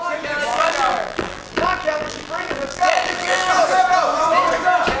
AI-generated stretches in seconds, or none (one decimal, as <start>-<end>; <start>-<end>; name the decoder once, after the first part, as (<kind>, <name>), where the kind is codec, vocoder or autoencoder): 0.5-3.5 (vocoder, BigVGAN v2)